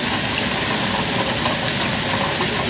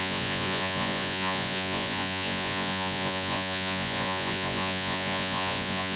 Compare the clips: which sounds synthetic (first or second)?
second